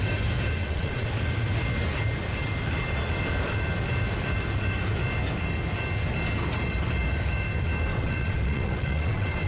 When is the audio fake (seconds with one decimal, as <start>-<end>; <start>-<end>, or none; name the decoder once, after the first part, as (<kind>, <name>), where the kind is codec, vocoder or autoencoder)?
0.6-1.1 (vocoder, WaveNeXt); 7.9-9.5